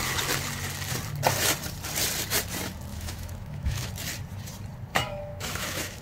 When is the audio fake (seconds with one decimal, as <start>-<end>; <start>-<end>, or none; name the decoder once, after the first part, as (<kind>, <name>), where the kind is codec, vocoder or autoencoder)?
2.9-3.9 (autoencoder, DAC-VAE); 4.9-6.0